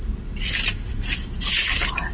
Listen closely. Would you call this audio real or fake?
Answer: real